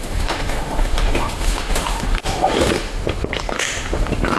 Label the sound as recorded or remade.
remade